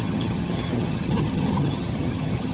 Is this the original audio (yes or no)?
no